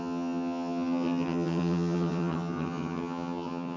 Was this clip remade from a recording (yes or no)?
yes